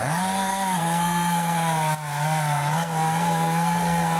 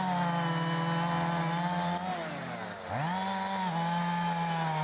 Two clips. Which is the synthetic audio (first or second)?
first